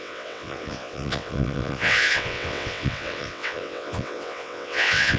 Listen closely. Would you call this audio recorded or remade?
remade